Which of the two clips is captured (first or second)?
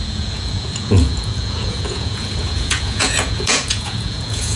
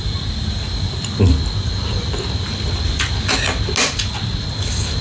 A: second